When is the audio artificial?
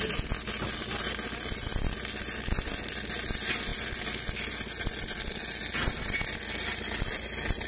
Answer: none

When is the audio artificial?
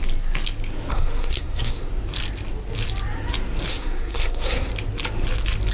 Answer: 0.9-1.9 (codec, SNAC); 3.7-4.7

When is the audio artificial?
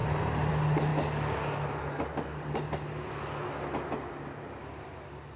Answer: none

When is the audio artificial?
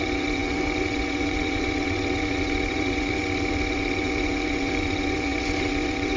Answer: 0.0-6.2 (vocoder, WaveNeXt)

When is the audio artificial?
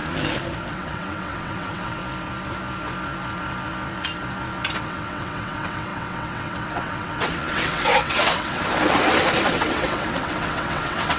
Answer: 0.7-2.0 (vocoder, WaveNeXt); 4.8-8.6; 9.5-11.2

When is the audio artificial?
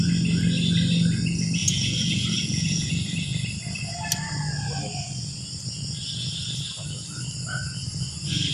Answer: 1.6-2.9 (vocoder, Vocos)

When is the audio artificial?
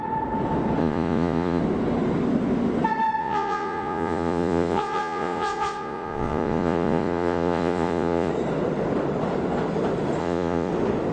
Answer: 0.8-1.6 (vocoder, Vocos); 3.2-8.3; 10.2-10.7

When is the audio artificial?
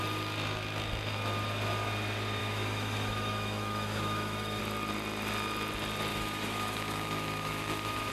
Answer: 2.4-4.6 (autoencoder, DAC-VAE); 6.1-8.1